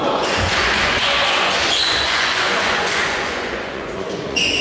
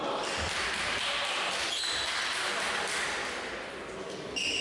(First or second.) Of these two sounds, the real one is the second